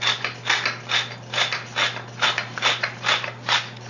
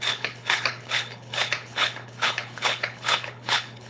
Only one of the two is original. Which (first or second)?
first